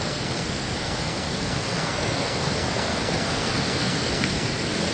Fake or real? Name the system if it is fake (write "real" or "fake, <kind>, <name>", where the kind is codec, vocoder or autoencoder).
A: fake, codec, SNAC